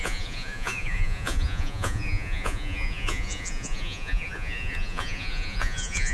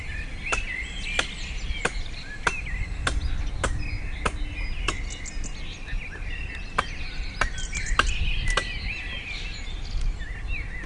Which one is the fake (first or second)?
first